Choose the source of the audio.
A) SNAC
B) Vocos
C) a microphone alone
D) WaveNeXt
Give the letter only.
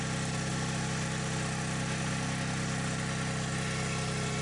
C